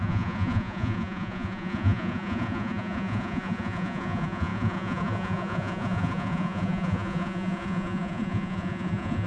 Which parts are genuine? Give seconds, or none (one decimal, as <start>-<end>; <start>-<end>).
none